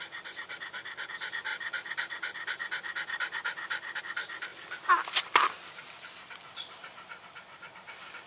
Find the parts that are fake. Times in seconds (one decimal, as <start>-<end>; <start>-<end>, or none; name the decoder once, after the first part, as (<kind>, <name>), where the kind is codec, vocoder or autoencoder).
none